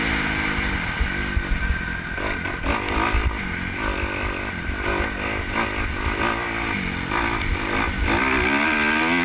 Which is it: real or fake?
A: real